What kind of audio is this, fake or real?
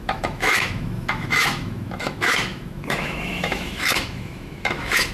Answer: fake